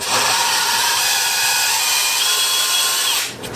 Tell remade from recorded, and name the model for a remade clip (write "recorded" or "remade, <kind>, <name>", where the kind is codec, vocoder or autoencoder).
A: recorded